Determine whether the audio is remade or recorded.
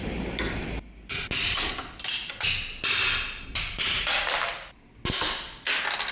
recorded